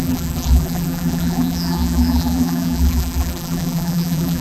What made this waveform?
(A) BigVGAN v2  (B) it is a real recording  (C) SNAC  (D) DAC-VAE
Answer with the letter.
A